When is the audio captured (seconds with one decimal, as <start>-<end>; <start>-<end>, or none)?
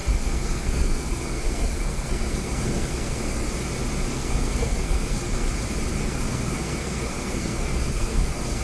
3.5-4.1; 5.5-5.9